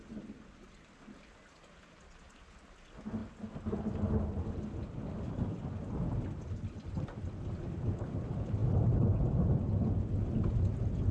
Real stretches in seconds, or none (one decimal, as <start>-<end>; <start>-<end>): 0.0-11.1